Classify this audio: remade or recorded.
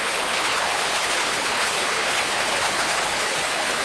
remade